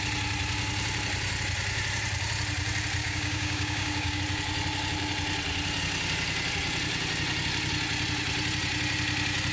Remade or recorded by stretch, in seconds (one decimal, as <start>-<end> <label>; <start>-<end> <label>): 0.0-3.0 recorded; 3.0-4.2 remade; 4.2-9.5 recorded